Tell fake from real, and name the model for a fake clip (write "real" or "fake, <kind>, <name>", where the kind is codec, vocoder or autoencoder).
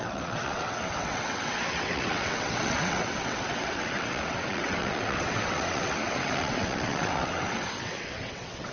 fake, vocoder, WaveNeXt